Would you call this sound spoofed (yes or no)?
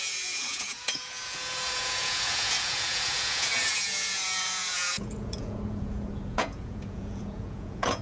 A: yes